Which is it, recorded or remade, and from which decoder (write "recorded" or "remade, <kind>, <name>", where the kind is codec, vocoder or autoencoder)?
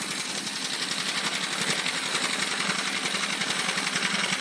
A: recorded